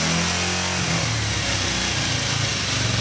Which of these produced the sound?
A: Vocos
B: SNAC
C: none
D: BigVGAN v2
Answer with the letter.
C